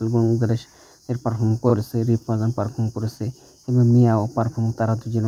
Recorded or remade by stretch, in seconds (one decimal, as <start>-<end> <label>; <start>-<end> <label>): 0.0-5.3 recorded